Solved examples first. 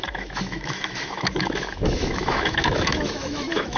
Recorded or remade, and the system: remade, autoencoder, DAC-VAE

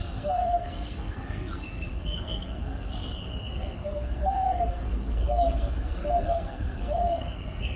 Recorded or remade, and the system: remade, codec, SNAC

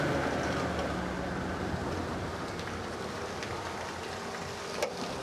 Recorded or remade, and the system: recorded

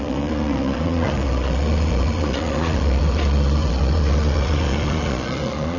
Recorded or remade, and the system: remade, vocoder, Vocos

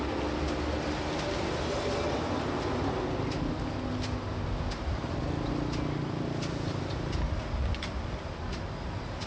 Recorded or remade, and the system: recorded